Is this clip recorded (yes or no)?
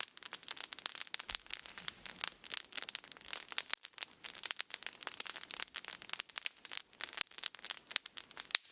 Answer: yes